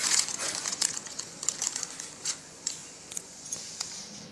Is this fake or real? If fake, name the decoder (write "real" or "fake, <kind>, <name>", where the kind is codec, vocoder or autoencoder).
fake, vocoder, Vocos